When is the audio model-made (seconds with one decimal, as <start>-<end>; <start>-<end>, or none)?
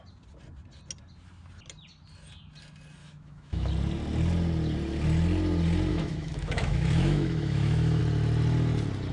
3.0-3.7; 5.9-8.0